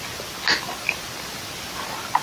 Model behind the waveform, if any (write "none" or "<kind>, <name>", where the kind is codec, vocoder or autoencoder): none